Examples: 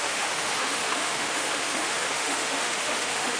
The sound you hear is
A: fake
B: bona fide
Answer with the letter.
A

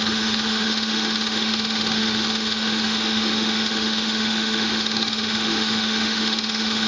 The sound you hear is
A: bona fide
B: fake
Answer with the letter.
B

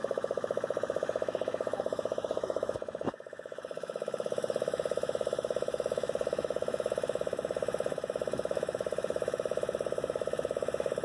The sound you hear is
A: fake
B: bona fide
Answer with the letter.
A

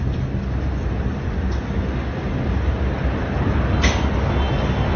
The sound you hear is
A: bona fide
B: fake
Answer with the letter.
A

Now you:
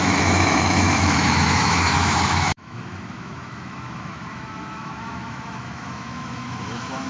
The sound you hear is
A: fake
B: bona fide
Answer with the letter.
A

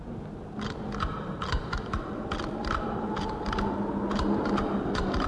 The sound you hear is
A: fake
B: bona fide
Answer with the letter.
B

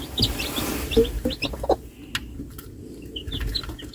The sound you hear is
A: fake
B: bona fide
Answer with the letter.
B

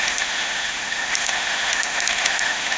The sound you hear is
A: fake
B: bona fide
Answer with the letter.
A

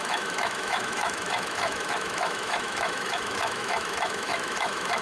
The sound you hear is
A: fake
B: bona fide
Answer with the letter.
A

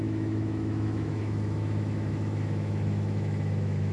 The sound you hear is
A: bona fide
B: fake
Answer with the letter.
B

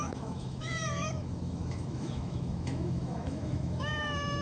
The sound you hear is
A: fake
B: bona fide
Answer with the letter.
A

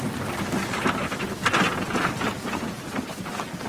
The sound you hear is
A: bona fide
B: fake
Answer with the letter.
A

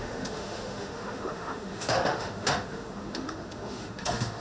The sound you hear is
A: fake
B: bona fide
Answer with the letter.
A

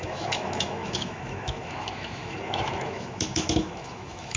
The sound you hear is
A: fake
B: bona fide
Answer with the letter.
A